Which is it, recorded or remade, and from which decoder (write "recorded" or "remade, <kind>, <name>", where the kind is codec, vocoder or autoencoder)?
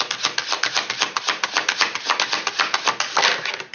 recorded